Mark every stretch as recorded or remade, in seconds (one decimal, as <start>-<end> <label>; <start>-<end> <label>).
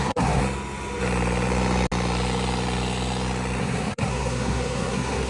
0.0-0.4 remade; 0.4-3.6 recorded; 3.6-5.3 remade